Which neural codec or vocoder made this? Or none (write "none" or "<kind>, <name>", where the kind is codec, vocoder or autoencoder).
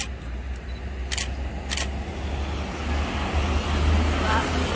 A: none